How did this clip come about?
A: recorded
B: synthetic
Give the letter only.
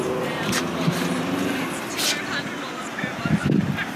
A